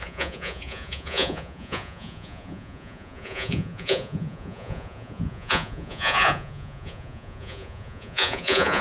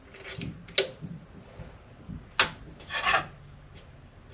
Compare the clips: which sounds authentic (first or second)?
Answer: second